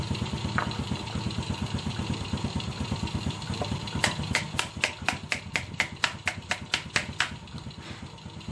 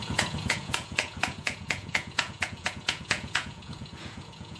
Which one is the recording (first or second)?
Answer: first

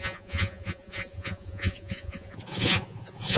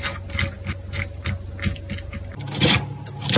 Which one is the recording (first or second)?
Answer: second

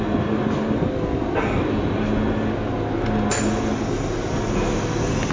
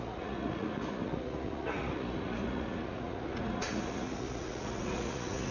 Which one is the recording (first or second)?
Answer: first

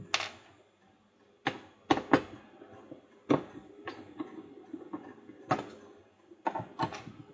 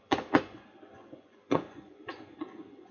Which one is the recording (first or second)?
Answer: first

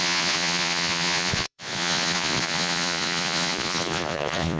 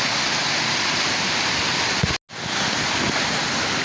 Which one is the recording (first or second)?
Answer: second